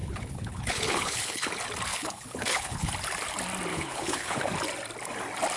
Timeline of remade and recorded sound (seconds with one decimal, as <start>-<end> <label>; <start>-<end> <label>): 0.0-1.5 remade; 1.5-1.9 recorded; 1.9-2.9 remade; 2.9-3.7 recorded; 3.7-4.4 remade; 4.4-5.6 recorded